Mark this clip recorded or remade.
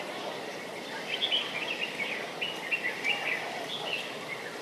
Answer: recorded